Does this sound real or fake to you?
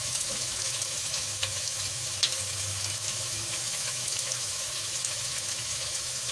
fake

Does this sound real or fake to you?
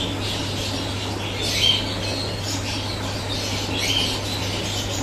real